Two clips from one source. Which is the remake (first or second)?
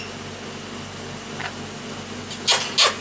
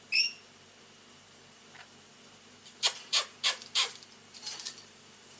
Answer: second